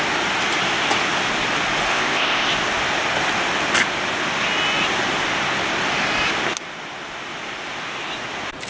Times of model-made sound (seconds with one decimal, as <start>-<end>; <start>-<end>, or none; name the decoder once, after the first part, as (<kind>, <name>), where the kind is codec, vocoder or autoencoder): 1.9-2.5 (codec, ZipCodec)